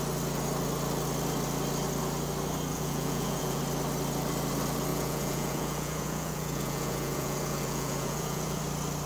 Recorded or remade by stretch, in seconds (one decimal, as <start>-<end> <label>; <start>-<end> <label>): 0.0-2.7 recorded; 2.7-3.6 remade; 3.6-4.9 recorded; 4.9-8.6 remade; 8.6-9.1 recorded